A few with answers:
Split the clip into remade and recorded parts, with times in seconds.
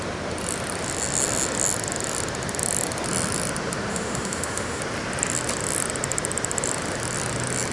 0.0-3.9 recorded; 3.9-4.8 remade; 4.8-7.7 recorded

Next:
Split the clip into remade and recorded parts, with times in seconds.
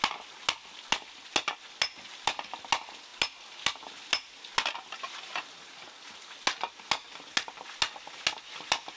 0.0-9.0 recorded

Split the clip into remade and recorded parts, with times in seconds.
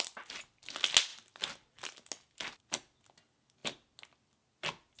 0.0-5.0 recorded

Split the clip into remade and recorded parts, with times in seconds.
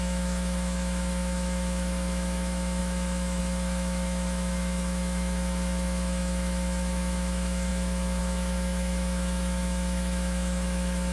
0.0-11.1 remade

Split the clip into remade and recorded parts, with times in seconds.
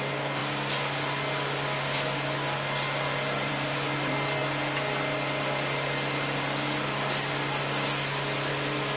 0.0-9.0 recorded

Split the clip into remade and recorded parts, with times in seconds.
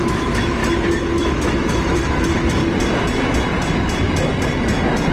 0.0-0.6 remade; 0.6-1.2 recorded; 1.2-2.6 remade; 2.6-5.1 recorded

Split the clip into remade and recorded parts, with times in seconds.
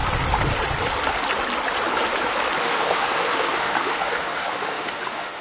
0.0-2.6 recorded; 2.6-5.4 remade